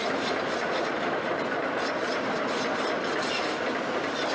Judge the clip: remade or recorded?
recorded